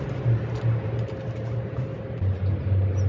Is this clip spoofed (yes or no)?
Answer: no